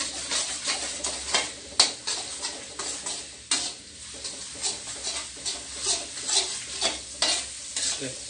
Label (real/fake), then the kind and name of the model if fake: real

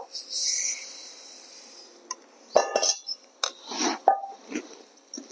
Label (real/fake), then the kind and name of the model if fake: real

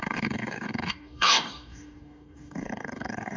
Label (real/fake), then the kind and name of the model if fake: fake, codec, DAC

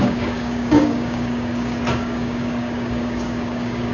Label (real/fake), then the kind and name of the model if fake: fake, codec, DAC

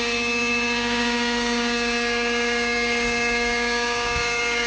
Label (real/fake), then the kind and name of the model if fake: fake, codec, DAC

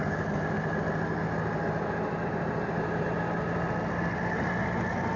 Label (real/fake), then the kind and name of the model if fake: real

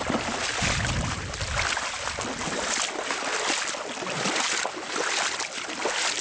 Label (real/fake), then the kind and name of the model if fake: real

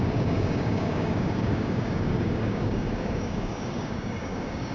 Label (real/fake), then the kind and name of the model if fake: fake, codec, DAC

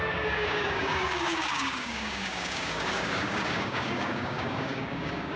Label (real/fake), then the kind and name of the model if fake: fake, codec, DAC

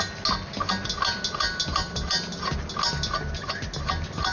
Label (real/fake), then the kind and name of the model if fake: real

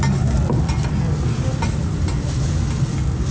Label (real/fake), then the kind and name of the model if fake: real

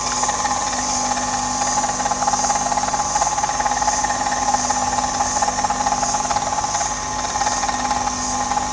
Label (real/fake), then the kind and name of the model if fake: real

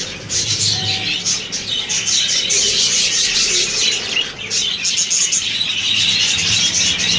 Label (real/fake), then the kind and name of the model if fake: real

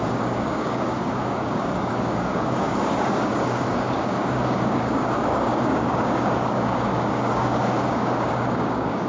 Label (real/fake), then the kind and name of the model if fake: fake, codec, DAC